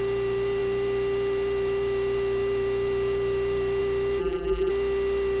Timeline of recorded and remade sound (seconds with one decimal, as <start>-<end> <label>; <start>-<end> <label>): 0.0-4.2 recorded; 4.2-4.7 remade; 4.7-5.4 recorded